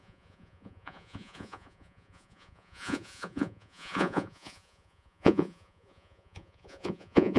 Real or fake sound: fake